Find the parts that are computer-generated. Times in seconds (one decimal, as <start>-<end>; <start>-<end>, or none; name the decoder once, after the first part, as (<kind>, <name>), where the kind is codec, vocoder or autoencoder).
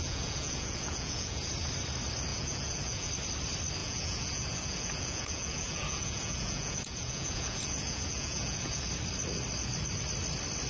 0.0-1.5 (vocoder, Vocos); 2.3-3.1; 3.8-8.8